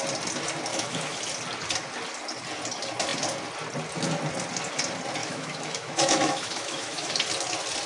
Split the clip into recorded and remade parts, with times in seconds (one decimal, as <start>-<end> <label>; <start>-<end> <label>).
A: 0.0-0.7 recorded; 0.7-1.2 remade; 1.2-5.2 recorded; 5.2-7.1 remade; 7.1-7.9 recorded